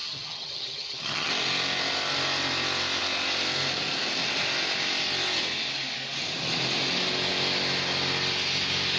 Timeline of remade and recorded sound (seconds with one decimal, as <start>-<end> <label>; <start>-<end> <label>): 0.0-1.3 remade; 1.3-9.0 recorded